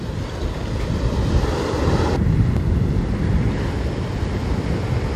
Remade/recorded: recorded